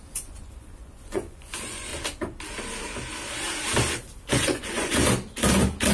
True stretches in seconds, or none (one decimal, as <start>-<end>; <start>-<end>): 1.9-4.3; 5.0-5.9